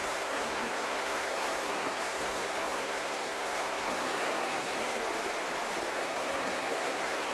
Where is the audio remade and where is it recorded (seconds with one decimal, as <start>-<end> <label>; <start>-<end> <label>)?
0.0-5.0 remade; 5.0-5.9 recorded; 5.9-7.3 remade